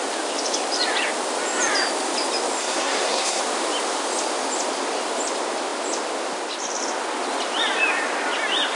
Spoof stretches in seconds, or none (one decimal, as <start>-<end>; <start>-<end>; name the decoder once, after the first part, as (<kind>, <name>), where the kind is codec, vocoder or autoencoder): 2.6-3.4 (codec, SNAC)